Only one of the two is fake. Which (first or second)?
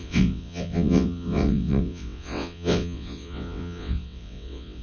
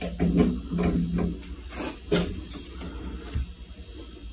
first